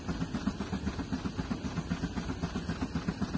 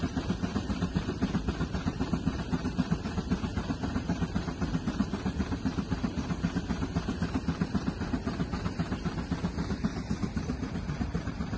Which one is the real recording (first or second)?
first